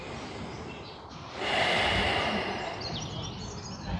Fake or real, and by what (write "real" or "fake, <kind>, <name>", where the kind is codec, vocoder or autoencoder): real